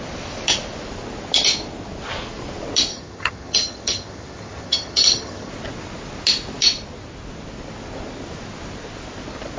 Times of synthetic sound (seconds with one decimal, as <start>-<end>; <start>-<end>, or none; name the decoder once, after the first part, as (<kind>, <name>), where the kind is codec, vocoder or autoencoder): 2.9-5.5 (vocoder, HiFi-GAN)